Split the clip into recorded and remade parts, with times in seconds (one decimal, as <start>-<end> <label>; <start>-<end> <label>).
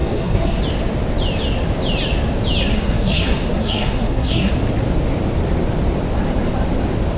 0.0-0.6 remade; 0.6-2.7 recorded; 2.7-4.5 remade; 4.5-7.2 recorded